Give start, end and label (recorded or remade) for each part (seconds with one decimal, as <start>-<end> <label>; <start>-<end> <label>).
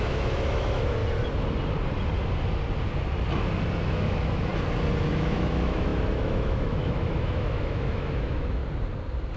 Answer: 0.0-1.0 remade; 1.0-3.8 recorded; 3.8-4.5 remade; 4.5-5.1 recorded; 5.1-8.6 remade; 8.6-9.4 recorded